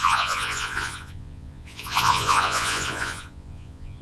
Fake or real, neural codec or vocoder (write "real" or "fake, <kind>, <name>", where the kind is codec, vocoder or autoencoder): fake, vocoder, Vocos